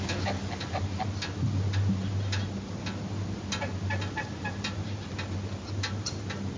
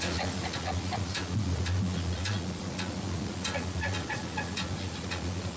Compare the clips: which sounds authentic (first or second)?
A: first